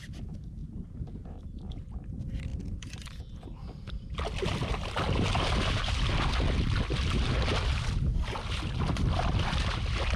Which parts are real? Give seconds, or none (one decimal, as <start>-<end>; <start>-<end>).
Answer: 0.0-0.6; 1.4-10.2